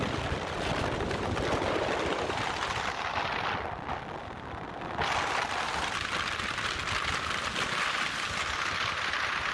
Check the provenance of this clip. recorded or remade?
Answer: recorded